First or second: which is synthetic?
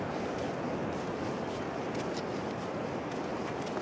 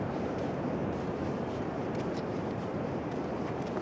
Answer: second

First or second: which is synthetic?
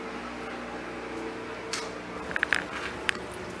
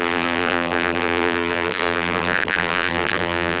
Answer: second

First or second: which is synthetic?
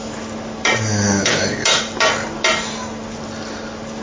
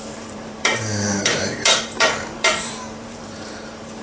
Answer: second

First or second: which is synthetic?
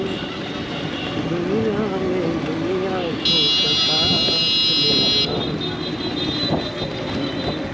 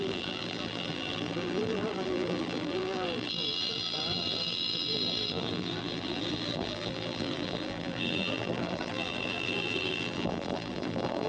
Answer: second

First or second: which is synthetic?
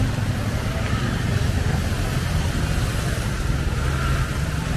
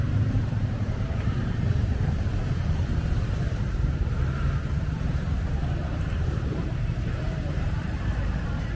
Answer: second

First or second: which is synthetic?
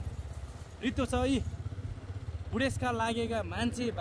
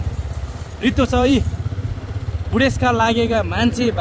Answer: second